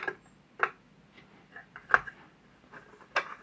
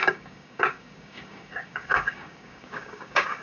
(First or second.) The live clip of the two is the first